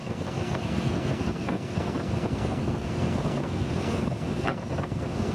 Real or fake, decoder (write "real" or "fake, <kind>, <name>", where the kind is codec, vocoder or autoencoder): fake, codec, SNAC